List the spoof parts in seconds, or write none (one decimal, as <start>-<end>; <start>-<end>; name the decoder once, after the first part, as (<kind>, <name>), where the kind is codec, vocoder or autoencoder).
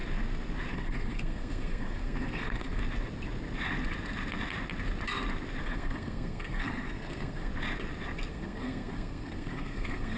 0.7-2.8 (codec, SNAC); 5.6-7.5; 8.3-10.2